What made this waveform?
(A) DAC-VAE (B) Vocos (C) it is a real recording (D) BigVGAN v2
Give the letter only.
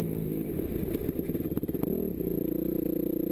C